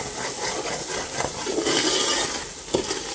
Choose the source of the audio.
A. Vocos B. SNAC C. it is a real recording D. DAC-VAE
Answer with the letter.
C